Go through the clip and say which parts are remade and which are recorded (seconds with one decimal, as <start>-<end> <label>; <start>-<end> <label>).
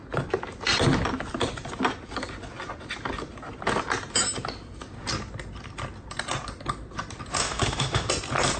0.0-7.4 recorded; 7.4-8.1 remade; 8.1-8.6 recorded